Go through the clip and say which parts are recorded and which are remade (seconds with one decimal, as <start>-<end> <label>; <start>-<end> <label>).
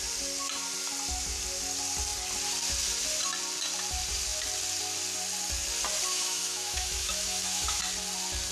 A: 0.0-6.1 recorded; 6.1-7.8 remade; 7.8-8.5 recorded